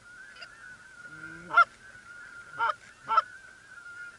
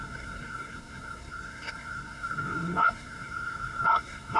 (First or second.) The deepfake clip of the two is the second